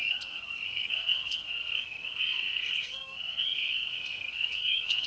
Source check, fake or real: fake